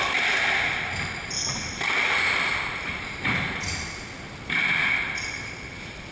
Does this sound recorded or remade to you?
recorded